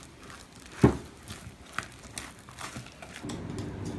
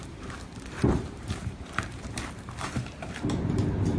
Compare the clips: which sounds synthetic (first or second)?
second